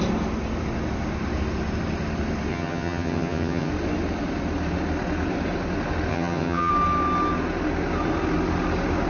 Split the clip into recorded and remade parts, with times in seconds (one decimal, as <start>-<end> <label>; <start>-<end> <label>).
0.0-2.5 recorded; 2.5-3.7 remade; 3.7-6.1 recorded; 6.1-6.7 remade; 6.7-9.1 recorded